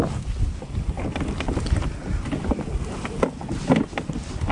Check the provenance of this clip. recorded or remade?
recorded